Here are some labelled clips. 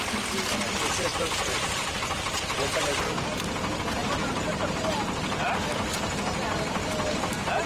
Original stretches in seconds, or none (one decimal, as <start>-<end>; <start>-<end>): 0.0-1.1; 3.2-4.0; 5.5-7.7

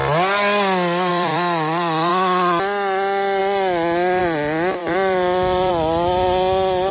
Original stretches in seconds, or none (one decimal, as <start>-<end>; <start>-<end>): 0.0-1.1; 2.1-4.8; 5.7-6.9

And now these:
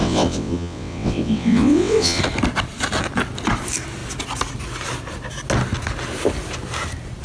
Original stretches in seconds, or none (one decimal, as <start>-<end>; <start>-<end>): 2.2-7.2